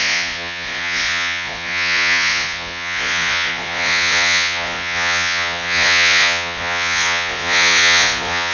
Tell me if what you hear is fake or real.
fake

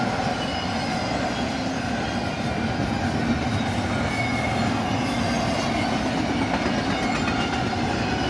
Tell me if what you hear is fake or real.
real